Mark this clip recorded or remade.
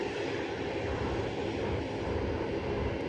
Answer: recorded